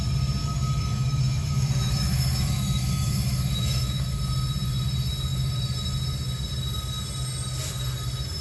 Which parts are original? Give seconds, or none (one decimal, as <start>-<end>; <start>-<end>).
0.0-0.4; 4.2-8.4